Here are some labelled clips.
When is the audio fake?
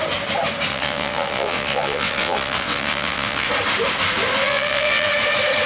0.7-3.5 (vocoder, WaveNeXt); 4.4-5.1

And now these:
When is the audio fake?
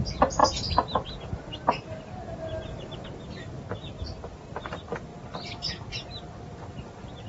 none